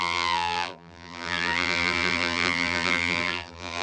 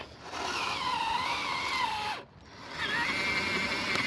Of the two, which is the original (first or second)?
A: second